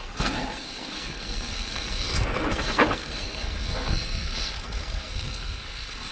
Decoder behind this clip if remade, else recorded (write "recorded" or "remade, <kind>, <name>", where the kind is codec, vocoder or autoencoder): remade, codec, SNAC